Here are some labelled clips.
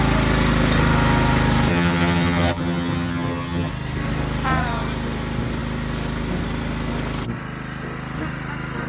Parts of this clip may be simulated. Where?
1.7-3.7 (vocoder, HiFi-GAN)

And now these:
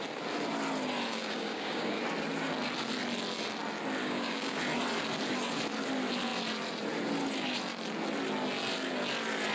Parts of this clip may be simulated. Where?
1.1-2.0 (codec, DAC); 4.0-4.6

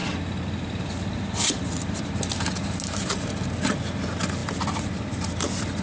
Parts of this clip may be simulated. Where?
none

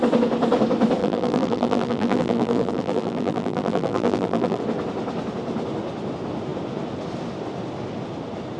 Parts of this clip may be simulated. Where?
1.0-4.6 (vocoder, BigVGAN v2)

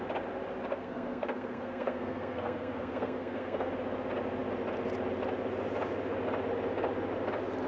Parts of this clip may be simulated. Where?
0.7-3.7 (codec, SNAC)

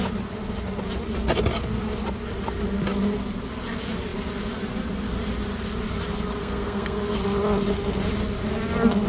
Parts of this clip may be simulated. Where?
6.4-7.2 (codec, SNAC)

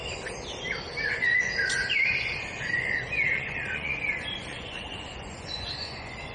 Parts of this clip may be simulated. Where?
1.1-6.3 (vocoder, Vocos)

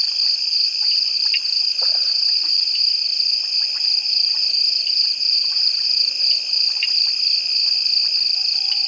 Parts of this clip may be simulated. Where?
none